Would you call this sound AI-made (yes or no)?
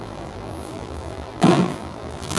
yes